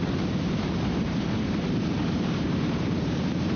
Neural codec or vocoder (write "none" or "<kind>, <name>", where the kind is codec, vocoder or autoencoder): vocoder, BigVGAN v2